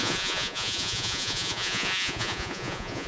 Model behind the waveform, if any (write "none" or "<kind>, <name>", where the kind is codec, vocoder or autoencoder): vocoder, Vocos